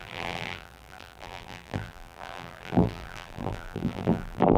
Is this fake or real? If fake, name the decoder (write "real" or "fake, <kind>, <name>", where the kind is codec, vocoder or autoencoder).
fake, vocoder, BigVGAN v2